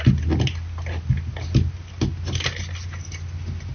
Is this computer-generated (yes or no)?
no